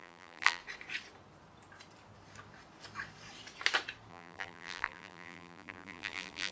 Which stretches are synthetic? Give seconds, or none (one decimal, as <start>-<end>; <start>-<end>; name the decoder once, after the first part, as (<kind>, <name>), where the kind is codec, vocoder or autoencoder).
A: 0.0-0.6 (vocoder, BigVGAN v2); 4.1-6.5